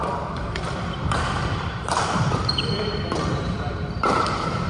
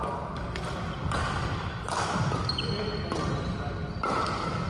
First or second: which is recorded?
second